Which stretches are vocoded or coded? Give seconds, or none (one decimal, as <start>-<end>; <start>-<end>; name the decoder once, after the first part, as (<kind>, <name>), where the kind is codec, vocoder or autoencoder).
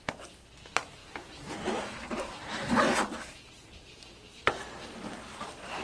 1.0-4.5 (vocoder, BigVGAN v2)